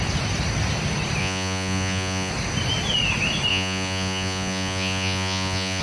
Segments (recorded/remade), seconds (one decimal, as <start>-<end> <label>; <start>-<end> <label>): 0.0-1.2 recorded; 1.2-2.3 remade; 2.3-3.5 recorded; 3.5-5.8 remade